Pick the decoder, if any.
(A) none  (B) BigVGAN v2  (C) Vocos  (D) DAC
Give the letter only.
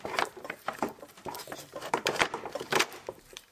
B